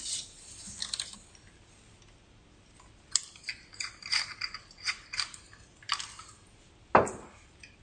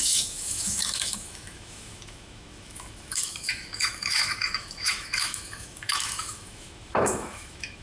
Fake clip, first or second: second